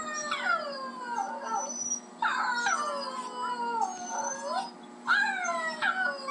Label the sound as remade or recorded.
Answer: recorded